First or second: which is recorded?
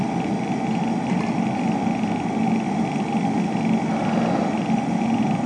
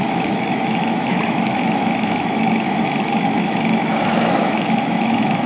first